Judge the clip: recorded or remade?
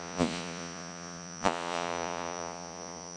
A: remade